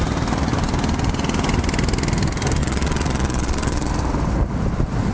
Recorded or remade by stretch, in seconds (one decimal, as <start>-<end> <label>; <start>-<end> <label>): 0.0-2.6 recorded; 2.6-3.9 remade; 3.9-5.1 recorded